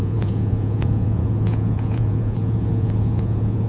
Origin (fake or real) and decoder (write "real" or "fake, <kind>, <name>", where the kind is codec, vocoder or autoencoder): fake, vocoder, Vocos